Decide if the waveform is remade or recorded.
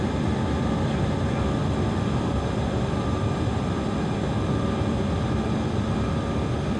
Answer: remade